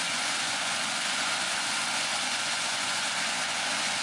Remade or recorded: remade